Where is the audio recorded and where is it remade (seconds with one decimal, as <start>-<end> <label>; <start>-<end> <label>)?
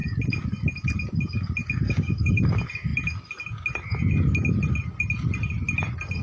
0.0-1.6 recorded; 1.6-2.4 remade; 2.4-6.2 recorded